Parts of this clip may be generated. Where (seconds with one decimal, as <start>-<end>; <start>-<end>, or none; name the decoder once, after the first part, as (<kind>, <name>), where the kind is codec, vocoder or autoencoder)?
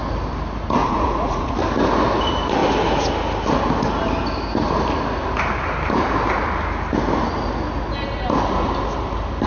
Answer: 0.8-1.6 (vocoder, Vocos)